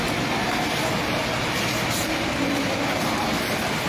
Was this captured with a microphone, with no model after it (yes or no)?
yes